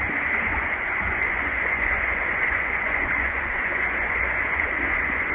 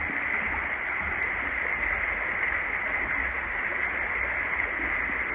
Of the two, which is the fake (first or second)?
first